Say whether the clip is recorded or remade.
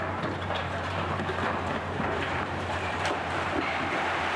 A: remade